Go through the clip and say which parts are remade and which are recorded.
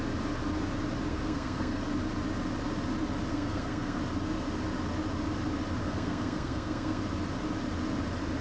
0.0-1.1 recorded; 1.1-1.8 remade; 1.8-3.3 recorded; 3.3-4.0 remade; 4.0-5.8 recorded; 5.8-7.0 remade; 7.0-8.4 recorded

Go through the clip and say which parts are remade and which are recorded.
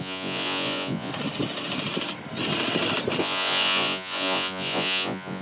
0.0-1.1 remade; 1.1-3.2 recorded; 3.2-5.4 remade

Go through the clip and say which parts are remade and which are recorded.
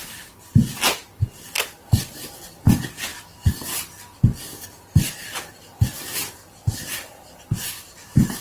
0.0-0.6 remade; 0.6-1.7 recorded; 1.7-3.1 remade; 3.1-6.3 recorded; 6.3-8.4 remade